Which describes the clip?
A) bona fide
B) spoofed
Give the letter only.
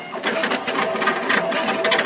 A